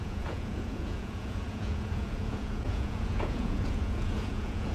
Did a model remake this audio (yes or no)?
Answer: yes